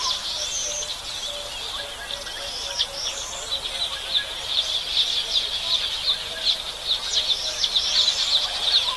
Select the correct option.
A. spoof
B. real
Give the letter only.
B